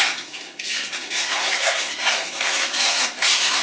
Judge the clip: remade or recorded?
remade